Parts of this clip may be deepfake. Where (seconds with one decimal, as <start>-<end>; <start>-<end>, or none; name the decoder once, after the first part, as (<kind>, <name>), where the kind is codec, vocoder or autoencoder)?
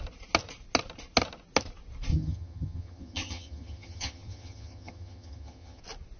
2.1-5.8 (vocoder, HiFi-GAN)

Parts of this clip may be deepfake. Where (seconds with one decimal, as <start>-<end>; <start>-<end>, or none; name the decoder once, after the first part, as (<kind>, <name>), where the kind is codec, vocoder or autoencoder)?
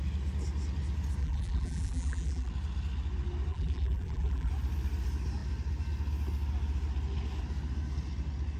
1.2-2.5 (vocoder, BigVGAN v2); 3.5-4.5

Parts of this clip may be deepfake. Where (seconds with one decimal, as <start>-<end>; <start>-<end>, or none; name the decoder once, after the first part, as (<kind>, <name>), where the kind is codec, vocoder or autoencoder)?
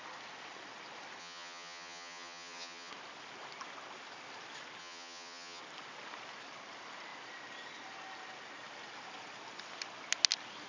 1.2-2.9 (vocoder, HiFi-GAN); 4.8-5.6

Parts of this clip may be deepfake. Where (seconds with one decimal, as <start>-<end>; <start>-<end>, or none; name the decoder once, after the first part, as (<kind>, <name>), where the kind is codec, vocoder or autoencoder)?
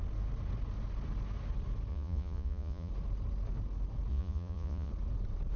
1.9-2.9 (vocoder, Vocos); 4.1-4.9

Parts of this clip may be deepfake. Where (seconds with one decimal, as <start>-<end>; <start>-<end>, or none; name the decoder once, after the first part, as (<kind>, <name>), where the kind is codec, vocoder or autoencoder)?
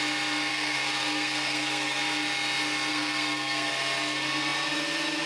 0.5-2.0 (codec, SNAC); 2.9-3.7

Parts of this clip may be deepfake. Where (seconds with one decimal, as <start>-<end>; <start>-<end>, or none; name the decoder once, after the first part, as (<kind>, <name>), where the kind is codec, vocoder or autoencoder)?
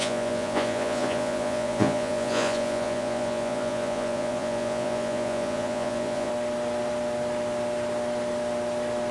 0.0-6.3 (vocoder, Vocos)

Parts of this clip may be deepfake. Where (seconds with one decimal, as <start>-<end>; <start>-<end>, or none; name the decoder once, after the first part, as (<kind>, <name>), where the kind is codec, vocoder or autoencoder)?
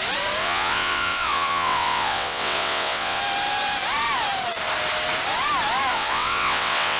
0.4-3.2 (vocoder, WaveNeXt); 5.9-7.0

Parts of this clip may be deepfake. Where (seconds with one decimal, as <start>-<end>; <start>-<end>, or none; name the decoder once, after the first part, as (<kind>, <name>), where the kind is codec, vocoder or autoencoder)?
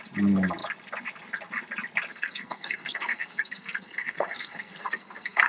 2.1-5.5 (codec, SNAC)